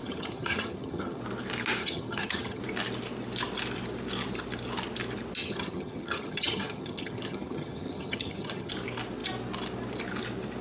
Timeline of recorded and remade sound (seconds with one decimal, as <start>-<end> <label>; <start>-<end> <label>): 0.0-1.2 remade; 1.2-1.8 recorded; 1.8-2.6 remade; 2.6-5.4 recorded; 5.4-8.7 remade; 8.7-10.6 recorded